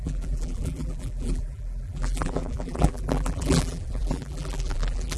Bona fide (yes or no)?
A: no